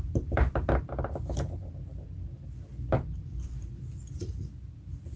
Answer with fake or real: real